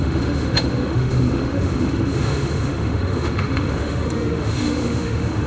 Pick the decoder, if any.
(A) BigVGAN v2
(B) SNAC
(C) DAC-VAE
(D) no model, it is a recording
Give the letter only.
C